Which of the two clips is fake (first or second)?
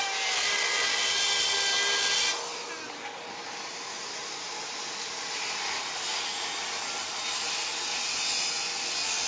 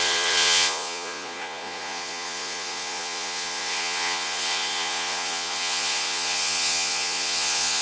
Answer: second